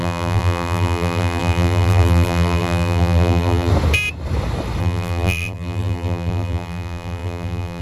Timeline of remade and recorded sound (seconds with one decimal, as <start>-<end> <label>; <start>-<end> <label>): 0.0-3.7 remade; 3.7-4.8 recorded; 4.8-7.8 remade